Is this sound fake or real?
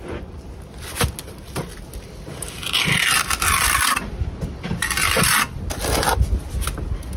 real